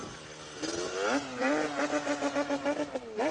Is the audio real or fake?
real